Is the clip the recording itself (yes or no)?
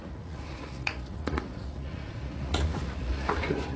no